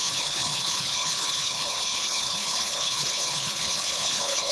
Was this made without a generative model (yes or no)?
no